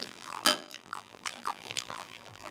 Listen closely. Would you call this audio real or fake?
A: fake